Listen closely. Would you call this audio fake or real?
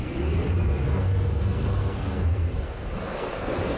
fake